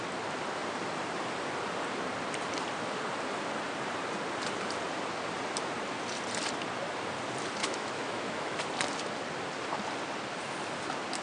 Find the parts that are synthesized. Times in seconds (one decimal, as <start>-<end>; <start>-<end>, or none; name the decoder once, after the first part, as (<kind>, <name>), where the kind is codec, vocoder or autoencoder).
7.6-8.6 (autoencoder, DAC-VAE)